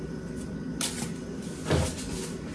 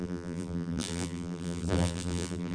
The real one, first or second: first